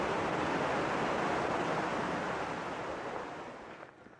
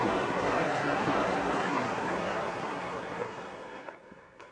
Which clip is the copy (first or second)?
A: second